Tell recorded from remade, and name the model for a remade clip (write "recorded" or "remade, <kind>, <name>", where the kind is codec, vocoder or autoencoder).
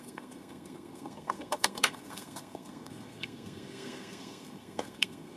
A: remade, codec, SNAC